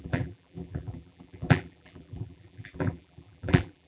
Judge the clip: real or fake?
fake